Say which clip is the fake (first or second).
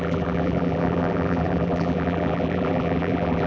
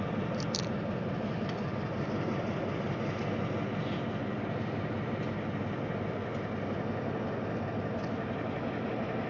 first